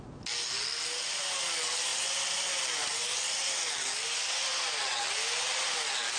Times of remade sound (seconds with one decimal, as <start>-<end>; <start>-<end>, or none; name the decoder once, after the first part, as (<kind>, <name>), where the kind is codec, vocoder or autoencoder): none